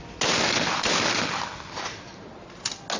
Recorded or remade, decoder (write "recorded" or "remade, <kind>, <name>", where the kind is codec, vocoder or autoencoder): recorded